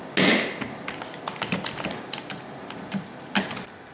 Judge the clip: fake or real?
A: real